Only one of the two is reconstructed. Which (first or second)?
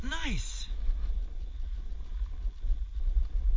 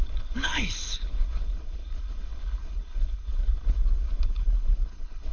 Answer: second